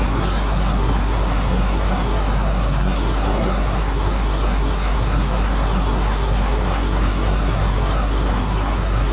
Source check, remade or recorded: remade